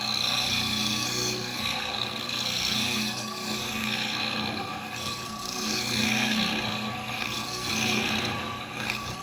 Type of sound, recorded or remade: remade